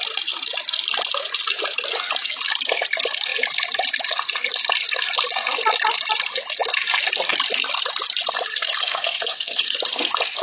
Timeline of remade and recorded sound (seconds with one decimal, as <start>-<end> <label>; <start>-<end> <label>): 0.0-8.5 recorded; 8.5-9.8 remade; 9.8-10.4 recorded